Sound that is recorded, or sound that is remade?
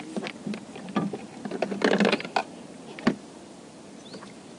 recorded